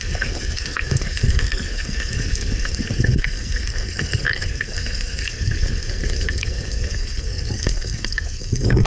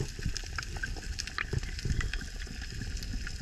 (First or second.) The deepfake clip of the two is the first